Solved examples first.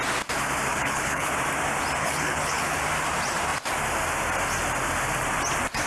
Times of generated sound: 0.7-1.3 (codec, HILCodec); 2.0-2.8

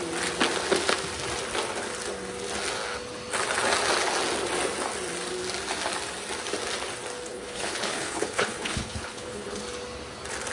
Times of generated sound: 7.3-9.6 (codec, HILCodec)

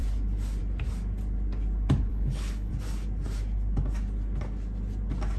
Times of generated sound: 2.1-2.7 (codec, HILCodec)